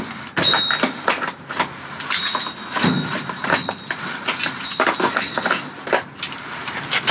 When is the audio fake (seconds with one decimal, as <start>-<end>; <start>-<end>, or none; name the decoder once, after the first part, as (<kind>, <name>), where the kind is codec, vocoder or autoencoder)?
none